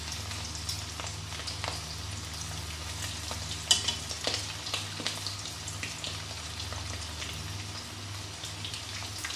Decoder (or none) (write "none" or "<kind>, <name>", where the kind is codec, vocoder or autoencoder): none